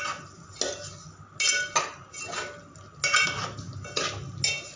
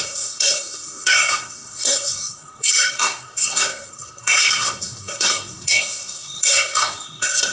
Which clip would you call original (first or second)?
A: first